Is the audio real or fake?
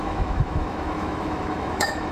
fake